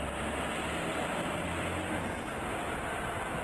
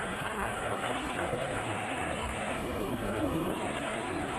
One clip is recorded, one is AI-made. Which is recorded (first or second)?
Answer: first